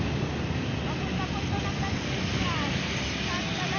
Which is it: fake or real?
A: real